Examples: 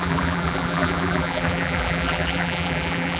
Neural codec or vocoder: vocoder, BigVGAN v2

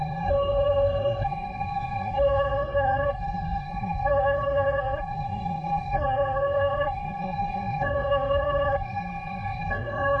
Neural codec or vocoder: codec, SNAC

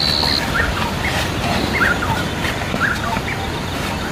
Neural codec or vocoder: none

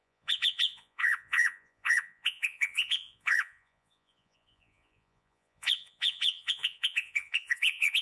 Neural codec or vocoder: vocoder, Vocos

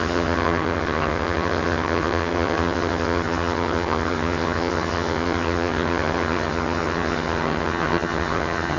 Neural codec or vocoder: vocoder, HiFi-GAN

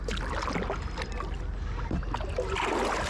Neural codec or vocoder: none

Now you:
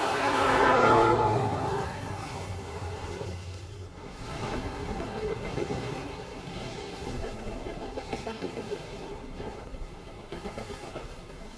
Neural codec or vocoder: codec, SNAC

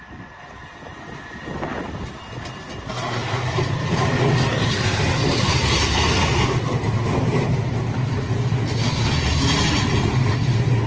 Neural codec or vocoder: none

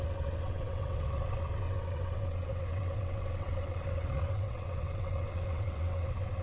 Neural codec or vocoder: vocoder, WaveNeXt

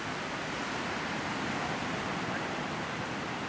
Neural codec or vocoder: none